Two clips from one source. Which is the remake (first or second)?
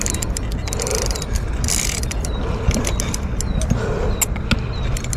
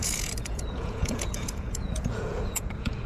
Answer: second